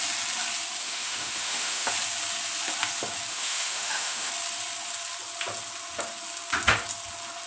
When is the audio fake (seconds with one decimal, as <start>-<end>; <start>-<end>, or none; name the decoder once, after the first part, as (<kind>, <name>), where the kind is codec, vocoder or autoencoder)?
0.8-1.9 (autoencoder, DAC-VAE); 3.3-4.3